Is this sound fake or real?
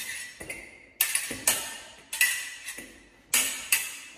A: real